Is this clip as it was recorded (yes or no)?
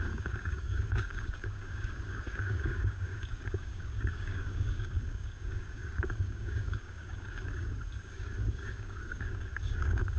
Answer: no